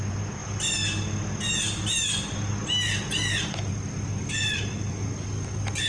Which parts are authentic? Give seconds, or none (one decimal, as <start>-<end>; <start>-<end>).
0.0-4.2; 4.9-5.9